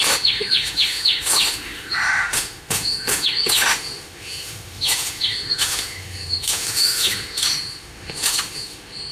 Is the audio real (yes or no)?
no